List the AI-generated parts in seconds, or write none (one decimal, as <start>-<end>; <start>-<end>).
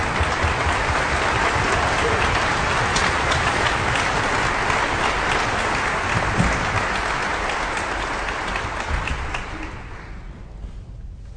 2.9-3.7